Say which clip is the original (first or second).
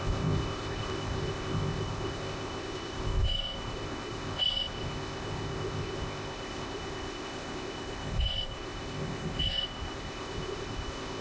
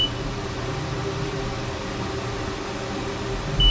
second